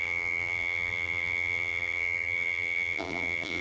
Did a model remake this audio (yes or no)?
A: yes